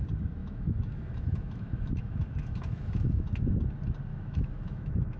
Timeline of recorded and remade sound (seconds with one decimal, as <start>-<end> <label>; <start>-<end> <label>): 0.0-0.4 recorded; 0.4-3.5 remade; 3.5-4.1 recorded; 4.1-5.2 remade